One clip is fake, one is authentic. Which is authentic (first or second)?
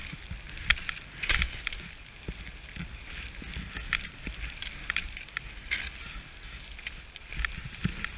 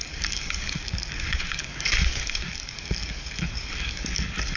first